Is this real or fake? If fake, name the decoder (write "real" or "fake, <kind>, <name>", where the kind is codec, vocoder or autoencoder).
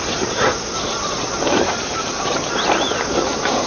real